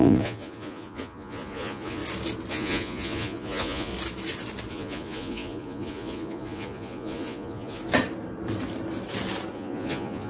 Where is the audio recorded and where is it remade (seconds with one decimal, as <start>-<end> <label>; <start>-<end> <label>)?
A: 0.0-2.0 remade; 2.0-2.5 recorded; 2.5-3.9 remade; 3.9-4.7 recorded; 4.7-7.8 remade; 7.8-9.5 recorded; 9.5-10.3 remade